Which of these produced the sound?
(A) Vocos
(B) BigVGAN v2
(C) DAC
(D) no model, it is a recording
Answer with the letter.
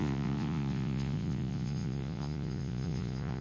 A